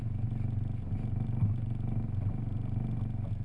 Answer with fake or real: real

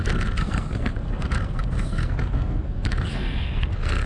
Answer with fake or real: fake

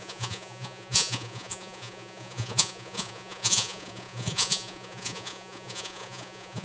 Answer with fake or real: fake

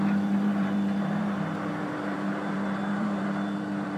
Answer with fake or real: fake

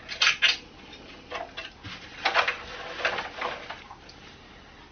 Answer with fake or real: real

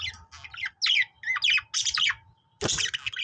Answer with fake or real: real